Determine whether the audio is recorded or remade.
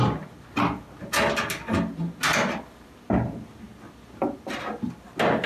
recorded